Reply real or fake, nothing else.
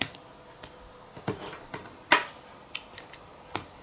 real